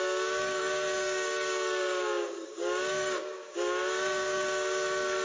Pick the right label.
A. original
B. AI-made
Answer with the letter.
B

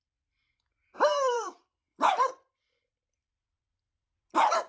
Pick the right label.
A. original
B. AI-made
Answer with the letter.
B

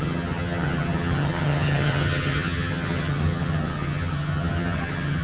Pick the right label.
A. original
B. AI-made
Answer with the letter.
B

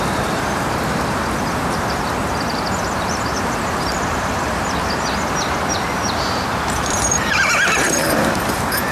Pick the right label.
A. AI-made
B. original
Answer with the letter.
A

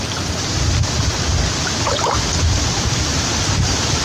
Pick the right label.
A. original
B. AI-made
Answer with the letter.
A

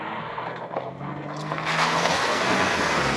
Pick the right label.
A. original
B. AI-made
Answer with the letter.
B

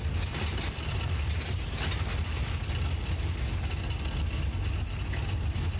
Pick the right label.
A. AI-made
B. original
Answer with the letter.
B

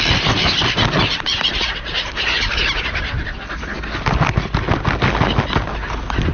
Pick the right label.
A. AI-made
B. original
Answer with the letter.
B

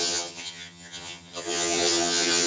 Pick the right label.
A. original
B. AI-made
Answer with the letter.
B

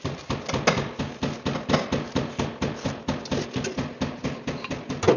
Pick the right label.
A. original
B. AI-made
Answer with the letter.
A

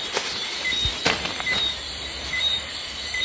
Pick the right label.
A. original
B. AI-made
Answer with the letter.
B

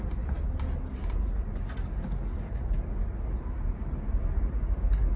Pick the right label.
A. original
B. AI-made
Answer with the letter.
A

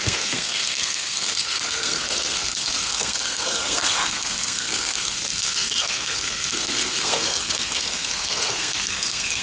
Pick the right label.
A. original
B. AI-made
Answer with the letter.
B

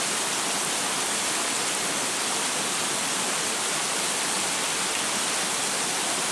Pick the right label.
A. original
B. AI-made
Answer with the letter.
A